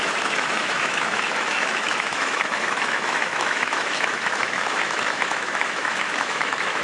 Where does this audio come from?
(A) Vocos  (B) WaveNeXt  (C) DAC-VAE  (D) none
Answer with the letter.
C